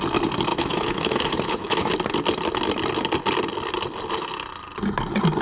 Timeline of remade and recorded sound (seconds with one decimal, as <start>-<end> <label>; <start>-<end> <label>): 0.0-0.5 recorded; 0.5-1.9 remade; 1.9-5.4 recorded